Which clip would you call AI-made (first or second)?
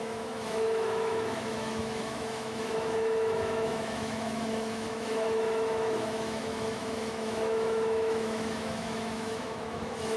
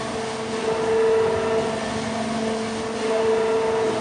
first